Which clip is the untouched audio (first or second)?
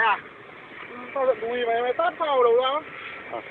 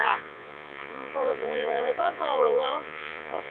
first